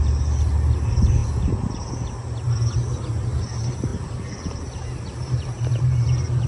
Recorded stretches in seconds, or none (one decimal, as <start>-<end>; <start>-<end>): 0.0-6.5

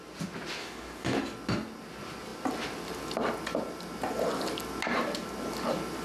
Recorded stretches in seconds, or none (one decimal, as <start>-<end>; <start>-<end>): 0.0-0.6; 1.2-6.0

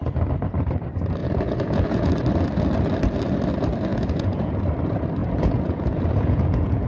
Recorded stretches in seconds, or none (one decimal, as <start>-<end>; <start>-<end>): 0.0-1.2; 2.1-3.9; 4.6-5.2

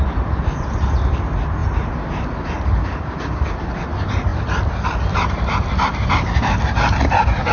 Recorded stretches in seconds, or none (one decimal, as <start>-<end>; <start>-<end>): 0.0-2.8; 3.8-7.5

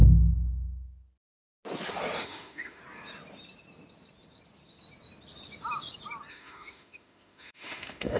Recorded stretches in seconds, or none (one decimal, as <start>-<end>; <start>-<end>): 0.0-2.2; 2.8-6.3